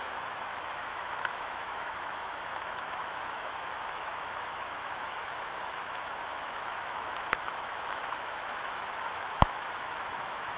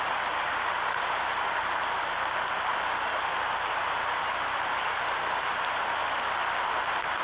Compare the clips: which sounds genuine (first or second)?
second